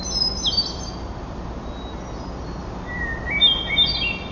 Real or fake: real